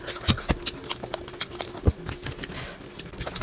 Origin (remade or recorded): recorded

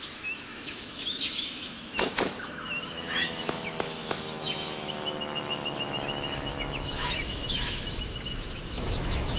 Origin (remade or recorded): remade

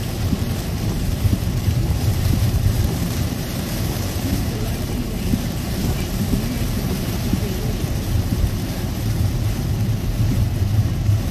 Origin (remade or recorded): remade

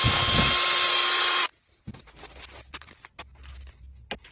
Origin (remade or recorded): recorded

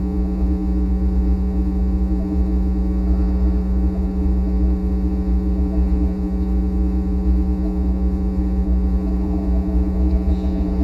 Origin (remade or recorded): remade